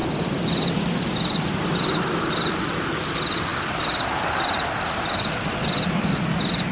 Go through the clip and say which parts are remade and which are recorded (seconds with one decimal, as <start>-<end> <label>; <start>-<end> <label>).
0.0-6.7 recorded